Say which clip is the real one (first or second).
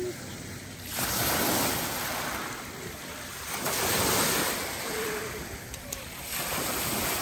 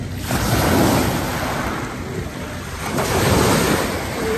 second